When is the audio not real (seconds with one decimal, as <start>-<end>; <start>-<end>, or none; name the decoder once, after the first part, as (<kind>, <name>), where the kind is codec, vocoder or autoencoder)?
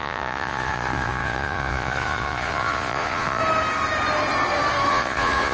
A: 0.0-3.4 (vocoder, Vocos); 4.9-5.5